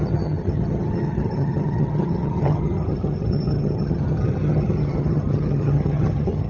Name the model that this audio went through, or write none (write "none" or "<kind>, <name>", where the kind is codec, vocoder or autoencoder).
vocoder, HiFi-GAN